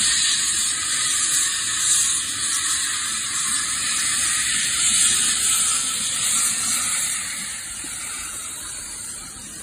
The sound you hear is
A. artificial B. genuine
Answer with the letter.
A